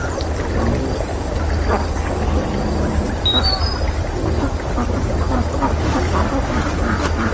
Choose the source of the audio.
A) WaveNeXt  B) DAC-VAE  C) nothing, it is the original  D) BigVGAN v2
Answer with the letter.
C